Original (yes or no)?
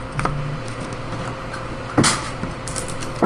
yes